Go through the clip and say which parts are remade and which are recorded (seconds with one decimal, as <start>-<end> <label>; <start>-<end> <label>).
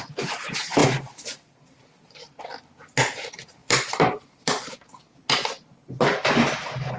0.0-0.8 recorded; 0.8-2.4 remade; 2.4-3.6 recorded; 3.6-4.8 remade; 4.8-7.0 recorded